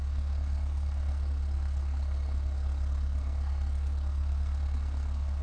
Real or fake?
fake